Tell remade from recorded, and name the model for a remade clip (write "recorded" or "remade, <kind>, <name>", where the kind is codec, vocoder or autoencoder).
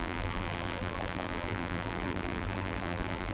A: remade, vocoder, BigVGAN v2